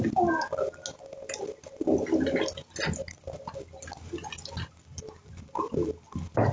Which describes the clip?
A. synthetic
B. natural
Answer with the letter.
B